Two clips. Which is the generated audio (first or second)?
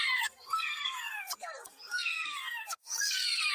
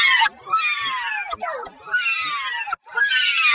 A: first